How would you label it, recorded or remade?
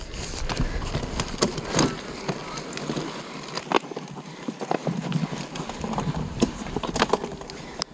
recorded